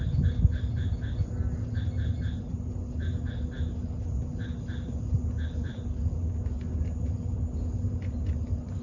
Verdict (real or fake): real